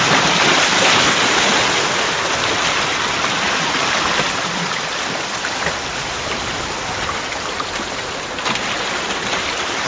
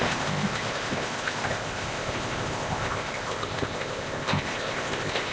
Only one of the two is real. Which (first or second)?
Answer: first